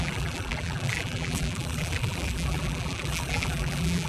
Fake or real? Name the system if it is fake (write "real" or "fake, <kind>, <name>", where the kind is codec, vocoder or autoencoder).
fake, vocoder, BigVGAN v2